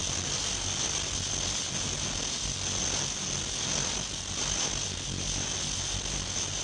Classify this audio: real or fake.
real